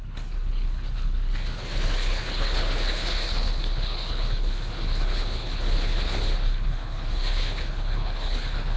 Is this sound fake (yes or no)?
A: yes